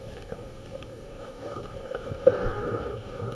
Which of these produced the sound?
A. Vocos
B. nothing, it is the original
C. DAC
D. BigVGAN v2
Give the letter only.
C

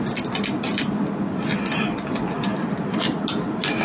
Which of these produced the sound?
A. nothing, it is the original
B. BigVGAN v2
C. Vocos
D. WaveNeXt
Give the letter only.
A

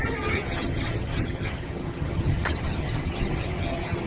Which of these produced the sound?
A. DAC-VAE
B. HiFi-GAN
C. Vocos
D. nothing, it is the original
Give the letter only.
B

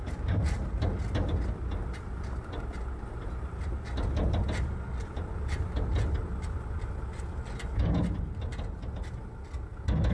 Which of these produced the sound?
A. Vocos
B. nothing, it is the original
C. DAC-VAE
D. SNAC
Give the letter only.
B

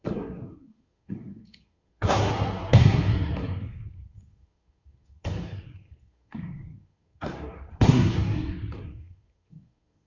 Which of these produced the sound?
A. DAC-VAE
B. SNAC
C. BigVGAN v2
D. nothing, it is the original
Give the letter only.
B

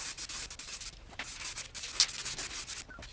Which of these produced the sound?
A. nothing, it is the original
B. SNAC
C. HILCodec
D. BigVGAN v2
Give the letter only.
A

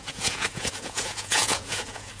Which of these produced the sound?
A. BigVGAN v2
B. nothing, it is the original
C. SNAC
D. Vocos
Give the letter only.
D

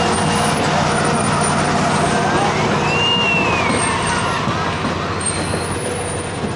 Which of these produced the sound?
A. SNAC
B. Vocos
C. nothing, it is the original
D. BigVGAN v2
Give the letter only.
C